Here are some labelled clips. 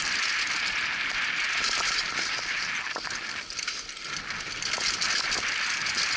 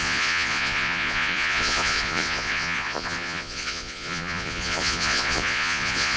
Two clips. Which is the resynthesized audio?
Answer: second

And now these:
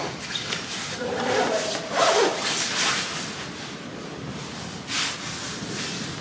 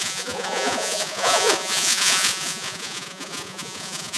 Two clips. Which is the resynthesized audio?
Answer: second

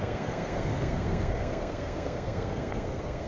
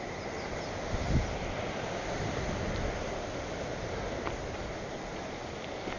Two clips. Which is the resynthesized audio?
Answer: first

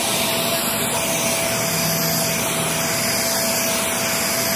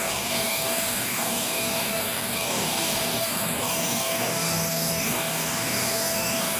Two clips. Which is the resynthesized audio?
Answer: second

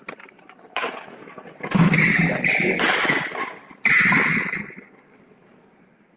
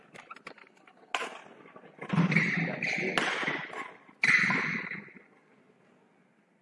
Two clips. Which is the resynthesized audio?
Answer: first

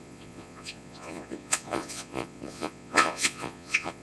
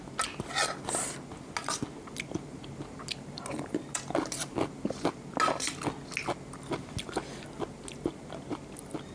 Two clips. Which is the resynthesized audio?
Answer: first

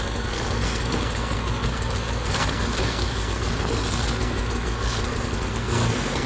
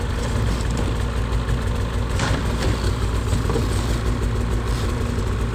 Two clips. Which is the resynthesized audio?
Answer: first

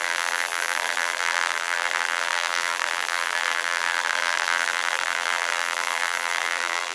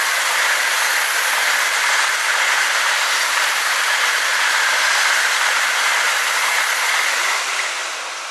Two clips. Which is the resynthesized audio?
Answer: first